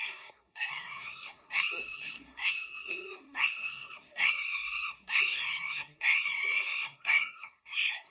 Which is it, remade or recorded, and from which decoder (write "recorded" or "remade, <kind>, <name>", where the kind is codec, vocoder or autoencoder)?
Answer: remade, codec, SNAC